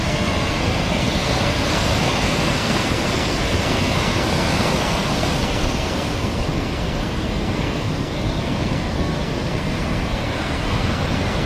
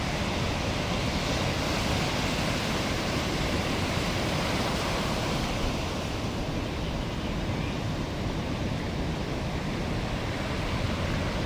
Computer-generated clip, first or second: first